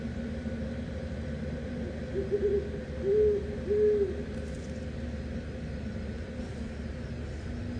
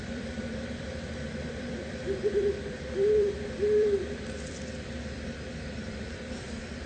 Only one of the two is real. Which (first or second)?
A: first